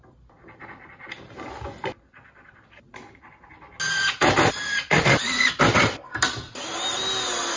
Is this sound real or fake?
real